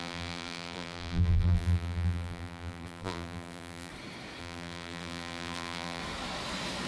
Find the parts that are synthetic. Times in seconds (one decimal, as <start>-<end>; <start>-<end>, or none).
0.0-3.9; 4.4-6.0